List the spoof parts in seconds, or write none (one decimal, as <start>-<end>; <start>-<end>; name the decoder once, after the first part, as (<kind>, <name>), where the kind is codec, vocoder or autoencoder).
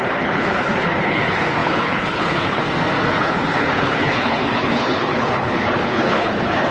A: 0.0-2.6 (codec, HILCodec); 3.1-6.7